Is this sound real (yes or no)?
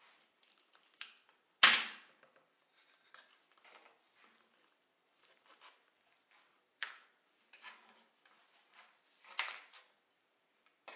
yes